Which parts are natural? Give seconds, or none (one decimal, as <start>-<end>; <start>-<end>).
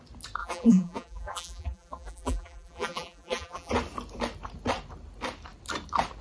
0.0-0.4; 3.7-6.2